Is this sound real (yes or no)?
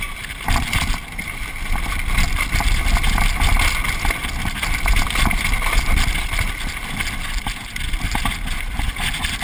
yes